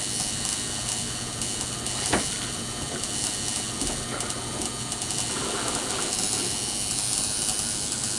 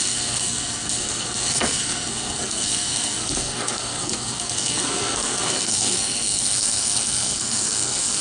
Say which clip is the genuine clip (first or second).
first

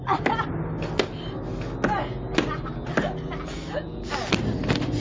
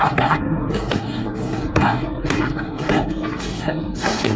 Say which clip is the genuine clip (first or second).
first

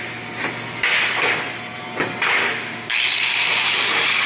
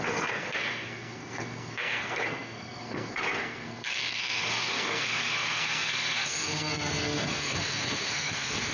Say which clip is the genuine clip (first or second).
first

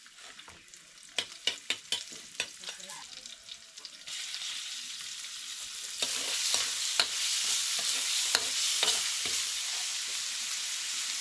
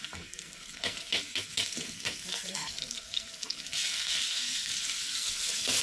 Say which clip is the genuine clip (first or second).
first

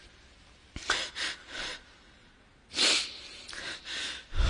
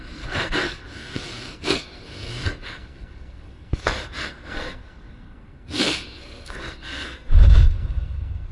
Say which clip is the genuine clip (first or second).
first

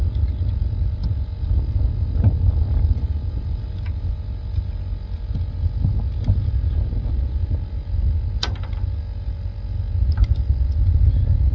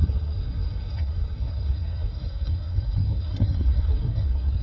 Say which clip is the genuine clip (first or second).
first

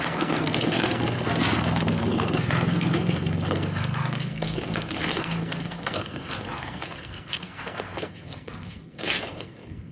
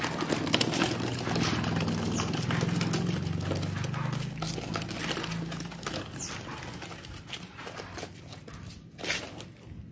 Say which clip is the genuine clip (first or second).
second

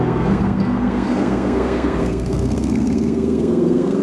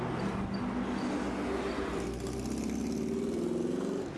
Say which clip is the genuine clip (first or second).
second